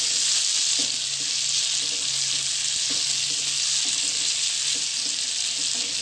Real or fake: real